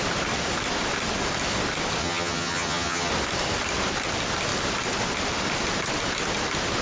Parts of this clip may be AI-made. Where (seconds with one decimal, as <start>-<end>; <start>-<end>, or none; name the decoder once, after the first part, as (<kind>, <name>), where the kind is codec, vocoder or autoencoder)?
2.0-3.1 (vocoder, HiFi-GAN)